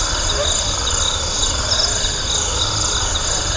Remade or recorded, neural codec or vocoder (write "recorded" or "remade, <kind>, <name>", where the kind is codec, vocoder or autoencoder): recorded